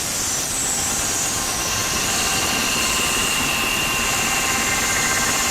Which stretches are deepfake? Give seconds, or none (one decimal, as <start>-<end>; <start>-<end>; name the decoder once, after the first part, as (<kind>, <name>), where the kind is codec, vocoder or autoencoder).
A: 1.8-4.7 (vocoder, BigVGAN v2)